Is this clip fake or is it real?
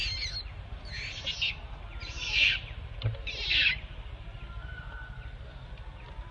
real